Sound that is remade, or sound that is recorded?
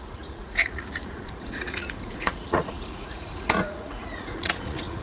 remade